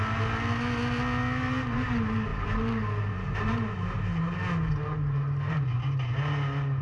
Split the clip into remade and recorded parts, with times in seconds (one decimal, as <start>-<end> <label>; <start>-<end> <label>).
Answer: 0.0-6.8 recorded

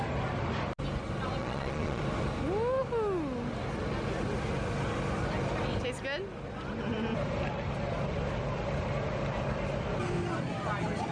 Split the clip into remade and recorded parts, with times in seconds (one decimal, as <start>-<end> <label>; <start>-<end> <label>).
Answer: 0.0-1.4 recorded; 1.4-2.0 remade; 2.0-11.1 recorded

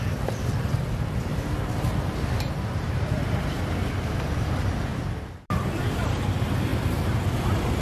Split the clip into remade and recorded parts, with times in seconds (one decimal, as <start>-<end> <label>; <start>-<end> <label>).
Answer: 0.0-1.3 recorded; 1.3-3.3 remade; 3.3-7.8 recorded

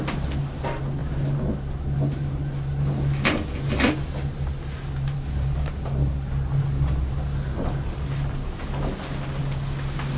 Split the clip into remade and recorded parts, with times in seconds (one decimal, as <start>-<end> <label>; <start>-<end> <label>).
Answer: 0.0-10.2 recorded

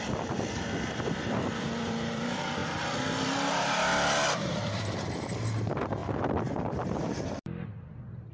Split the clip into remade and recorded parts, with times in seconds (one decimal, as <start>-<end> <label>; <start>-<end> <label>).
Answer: 0.0-3.9 remade; 3.9-4.5 recorded; 4.5-6.0 remade; 6.0-7.4 recorded; 7.4-8.3 remade

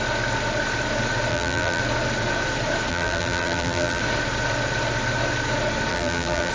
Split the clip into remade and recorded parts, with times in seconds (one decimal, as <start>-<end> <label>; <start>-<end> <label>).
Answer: 0.0-1.3 recorded; 1.3-1.8 remade; 1.8-2.9 recorded; 2.9-4.0 remade; 4.0-5.9 recorded; 5.9-6.5 remade